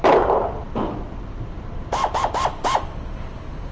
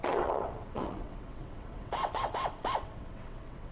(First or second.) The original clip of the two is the first